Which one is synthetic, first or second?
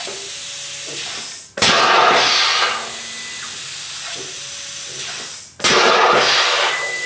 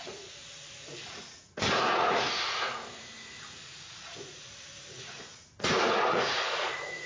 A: second